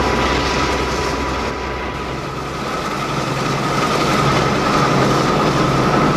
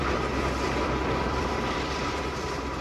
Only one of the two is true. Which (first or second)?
first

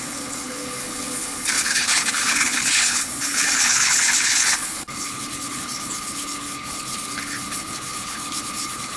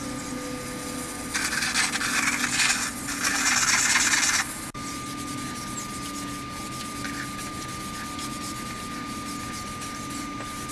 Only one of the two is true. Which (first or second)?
second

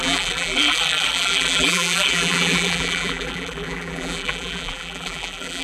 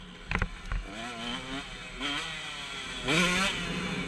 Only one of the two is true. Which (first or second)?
second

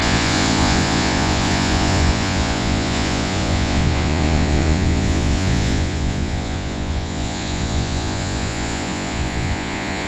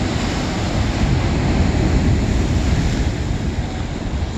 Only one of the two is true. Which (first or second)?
second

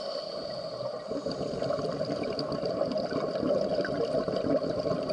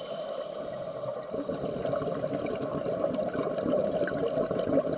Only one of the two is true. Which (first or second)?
first